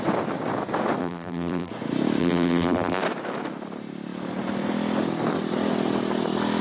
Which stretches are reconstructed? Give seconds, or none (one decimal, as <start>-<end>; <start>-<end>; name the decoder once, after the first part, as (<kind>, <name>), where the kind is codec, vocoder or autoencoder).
1.0-1.7 (vocoder, BigVGAN v2); 2.2-3.0